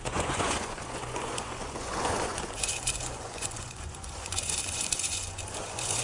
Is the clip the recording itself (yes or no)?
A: no